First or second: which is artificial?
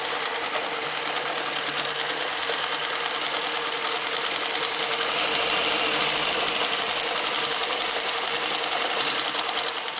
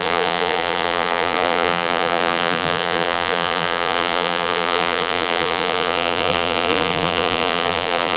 second